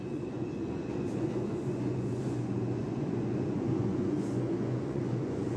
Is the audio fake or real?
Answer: fake